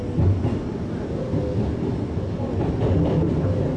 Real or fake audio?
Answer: real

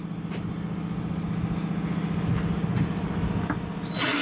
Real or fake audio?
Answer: real